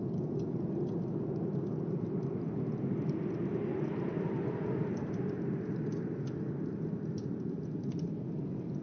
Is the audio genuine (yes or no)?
yes